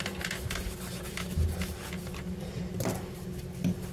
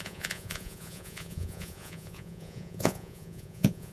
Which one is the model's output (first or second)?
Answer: second